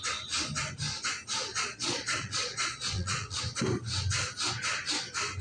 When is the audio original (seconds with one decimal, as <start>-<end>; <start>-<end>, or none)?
0.0-1.5; 3.4-5.4